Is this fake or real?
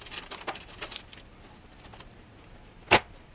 real